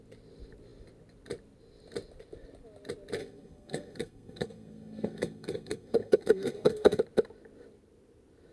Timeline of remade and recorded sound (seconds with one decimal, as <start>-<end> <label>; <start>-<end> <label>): 0.0-3.2 recorded; 3.2-7.0 remade; 7.0-8.5 recorded